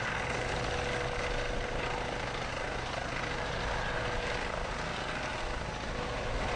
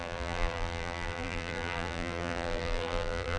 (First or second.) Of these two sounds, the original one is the first